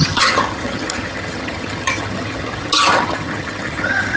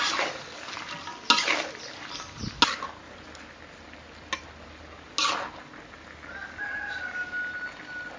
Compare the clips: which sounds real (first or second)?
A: second